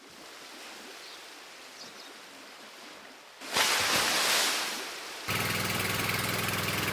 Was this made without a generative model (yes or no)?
yes